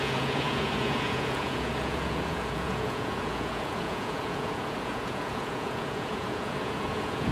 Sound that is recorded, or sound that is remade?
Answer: remade